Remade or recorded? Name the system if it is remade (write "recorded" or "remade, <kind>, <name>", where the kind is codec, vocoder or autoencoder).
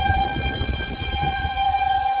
remade, vocoder, Vocos